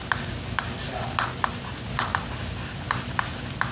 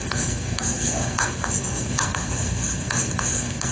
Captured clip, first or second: first